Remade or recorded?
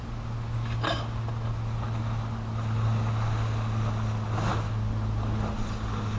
recorded